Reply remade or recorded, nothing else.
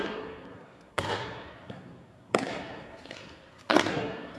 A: remade